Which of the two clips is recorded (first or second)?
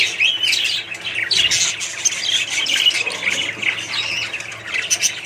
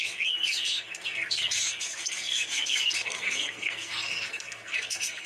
first